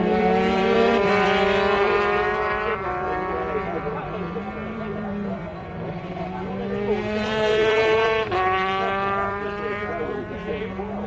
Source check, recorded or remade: remade